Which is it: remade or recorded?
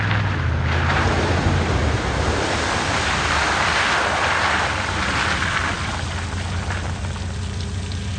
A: recorded